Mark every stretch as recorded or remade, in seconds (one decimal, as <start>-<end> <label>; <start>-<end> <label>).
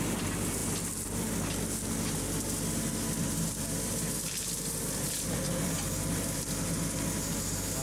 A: 0.0-7.8 recorded